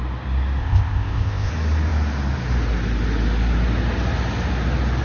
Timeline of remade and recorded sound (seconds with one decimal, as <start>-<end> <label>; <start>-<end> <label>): 0.0-0.6 recorded; 0.6-1.5 remade; 1.5-5.0 recorded